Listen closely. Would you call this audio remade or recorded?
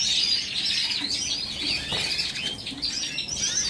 recorded